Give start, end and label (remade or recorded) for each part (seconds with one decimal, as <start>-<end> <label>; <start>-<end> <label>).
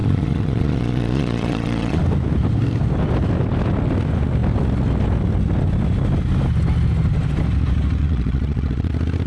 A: 0.0-2.0 remade; 2.0-8.0 recorded; 8.0-8.9 remade; 8.9-9.3 recorded